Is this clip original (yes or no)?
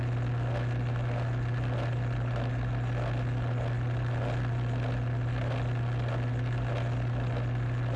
yes